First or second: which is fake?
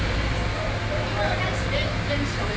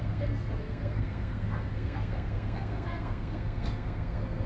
second